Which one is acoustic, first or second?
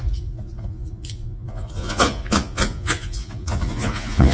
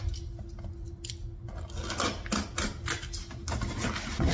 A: second